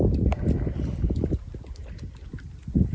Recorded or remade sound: recorded